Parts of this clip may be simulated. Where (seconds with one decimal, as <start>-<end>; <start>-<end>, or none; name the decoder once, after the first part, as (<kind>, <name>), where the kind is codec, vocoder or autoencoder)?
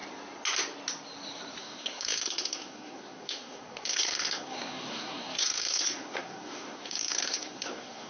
1.6-8.1 (codec, SNAC)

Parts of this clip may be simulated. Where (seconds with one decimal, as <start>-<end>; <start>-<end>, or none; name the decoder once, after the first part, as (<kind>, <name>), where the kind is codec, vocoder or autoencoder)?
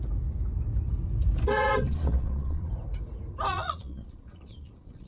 1.5-2.7 (vocoder, Vocos); 3.5-5.1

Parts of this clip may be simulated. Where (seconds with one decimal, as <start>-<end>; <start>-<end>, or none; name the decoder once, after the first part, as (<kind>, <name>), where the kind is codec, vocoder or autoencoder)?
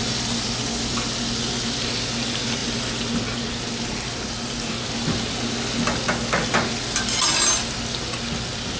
none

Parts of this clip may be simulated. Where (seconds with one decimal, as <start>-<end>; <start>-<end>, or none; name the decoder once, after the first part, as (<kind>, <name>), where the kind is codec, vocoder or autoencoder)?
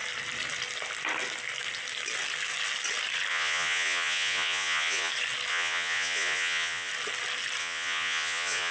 3.3-5.1 (vocoder, Vocos); 5.5-6.9; 7.6-8.7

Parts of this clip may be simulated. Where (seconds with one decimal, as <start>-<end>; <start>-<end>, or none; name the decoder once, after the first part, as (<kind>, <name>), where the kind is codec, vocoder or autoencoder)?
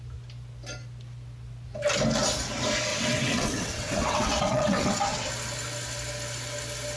2.9-5.3 (vocoder, WaveNeXt)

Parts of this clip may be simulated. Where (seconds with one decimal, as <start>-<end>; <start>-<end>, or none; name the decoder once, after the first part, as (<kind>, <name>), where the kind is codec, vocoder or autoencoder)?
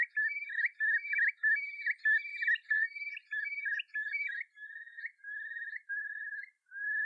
none